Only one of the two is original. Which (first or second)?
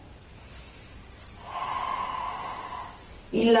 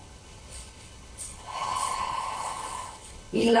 first